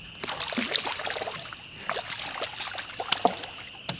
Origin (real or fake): real